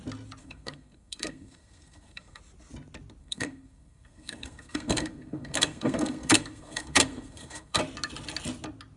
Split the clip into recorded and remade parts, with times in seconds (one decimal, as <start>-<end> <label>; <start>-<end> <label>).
0.0-0.4 recorded; 0.4-2.4 remade; 2.4-3.2 recorded; 3.2-7.8 remade; 7.8-9.0 recorded